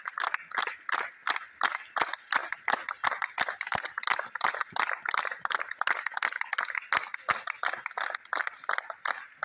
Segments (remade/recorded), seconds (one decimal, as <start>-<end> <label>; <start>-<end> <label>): 0.0-2.4 recorded; 2.4-3.1 remade; 3.1-9.4 recorded